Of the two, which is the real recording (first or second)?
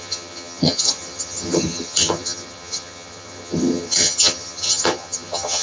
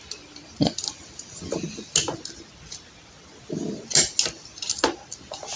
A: second